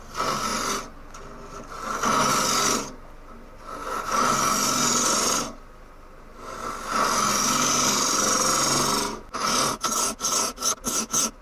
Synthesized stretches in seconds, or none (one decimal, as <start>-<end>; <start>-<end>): none